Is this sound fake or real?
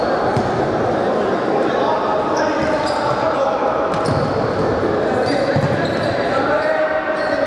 real